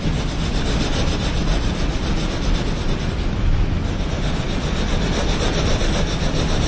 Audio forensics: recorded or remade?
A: recorded